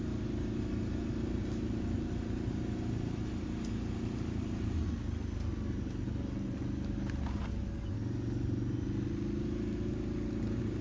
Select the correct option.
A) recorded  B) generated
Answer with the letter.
A